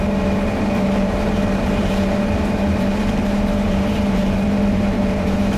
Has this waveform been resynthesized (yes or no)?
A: yes